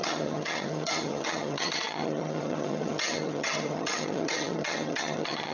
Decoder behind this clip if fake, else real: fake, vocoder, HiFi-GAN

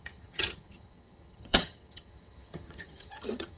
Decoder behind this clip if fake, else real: fake, vocoder, HiFi-GAN